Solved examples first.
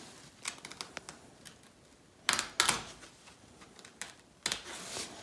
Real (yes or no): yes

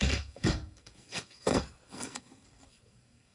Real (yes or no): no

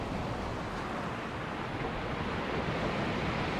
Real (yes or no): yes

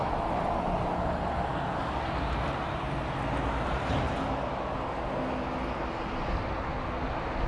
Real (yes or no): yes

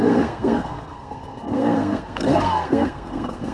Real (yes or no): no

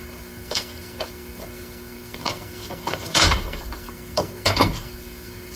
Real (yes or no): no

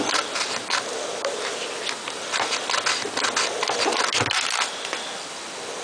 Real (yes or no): yes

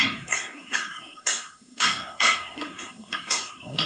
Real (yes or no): no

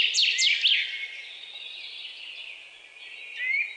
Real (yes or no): yes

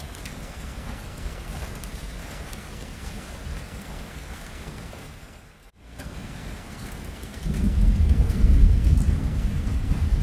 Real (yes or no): no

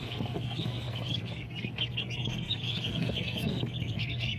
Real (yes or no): no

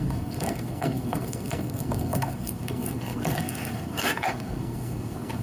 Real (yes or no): no